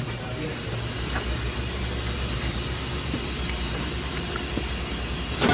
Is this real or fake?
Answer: real